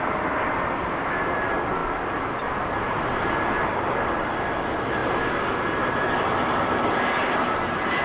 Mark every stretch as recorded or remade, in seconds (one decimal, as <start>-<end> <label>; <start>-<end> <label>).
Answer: 0.0-7.2 recorded; 7.2-8.0 remade